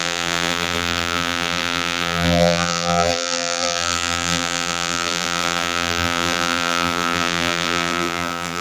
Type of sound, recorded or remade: remade